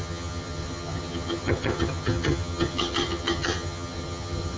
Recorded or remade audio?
remade